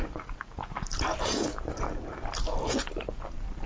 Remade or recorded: recorded